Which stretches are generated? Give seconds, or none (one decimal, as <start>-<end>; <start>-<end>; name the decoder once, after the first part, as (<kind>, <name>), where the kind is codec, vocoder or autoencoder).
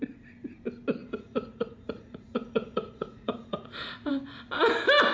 1.0-4.1 (vocoder, Vocos)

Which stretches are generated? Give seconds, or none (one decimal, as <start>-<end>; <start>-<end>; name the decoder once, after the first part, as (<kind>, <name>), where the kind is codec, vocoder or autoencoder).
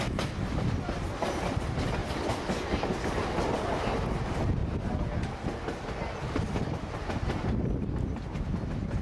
2.0-3.6 (vocoder, BigVGAN v2)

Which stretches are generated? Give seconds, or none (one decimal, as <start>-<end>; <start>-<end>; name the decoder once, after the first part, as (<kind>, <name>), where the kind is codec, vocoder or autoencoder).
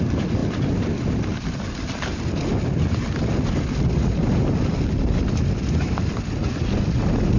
none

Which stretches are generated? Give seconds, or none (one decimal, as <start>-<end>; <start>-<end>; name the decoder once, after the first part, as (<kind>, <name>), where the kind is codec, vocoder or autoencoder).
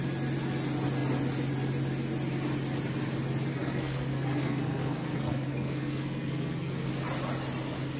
3.5-6.9 (codec, SNAC)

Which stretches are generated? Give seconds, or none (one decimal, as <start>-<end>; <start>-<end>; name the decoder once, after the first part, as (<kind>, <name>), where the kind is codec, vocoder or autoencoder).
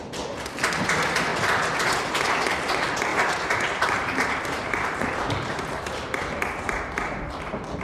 3.1-7.3 (vocoder, BigVGAN v2)